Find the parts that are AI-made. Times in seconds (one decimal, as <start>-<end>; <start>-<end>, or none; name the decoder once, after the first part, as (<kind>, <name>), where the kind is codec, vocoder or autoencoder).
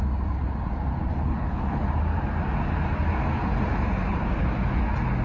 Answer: 1.1-1.9 (codec, HILCodec)